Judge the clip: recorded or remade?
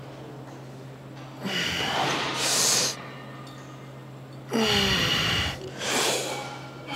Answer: recorded